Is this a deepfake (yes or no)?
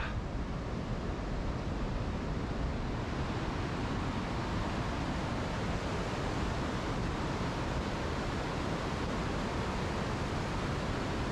no